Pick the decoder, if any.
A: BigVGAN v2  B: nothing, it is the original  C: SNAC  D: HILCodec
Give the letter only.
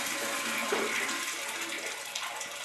B